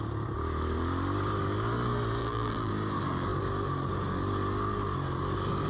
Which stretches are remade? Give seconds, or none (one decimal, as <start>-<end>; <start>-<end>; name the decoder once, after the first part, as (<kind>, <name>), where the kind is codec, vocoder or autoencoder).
2.2-2.7 (vocoder, BigVGAN v2)